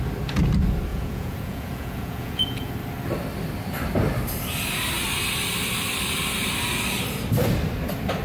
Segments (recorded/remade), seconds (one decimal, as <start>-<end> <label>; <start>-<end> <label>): 0.0-0.9 recorded; 0.9-2.7 remade; 2.7-8.2 recorded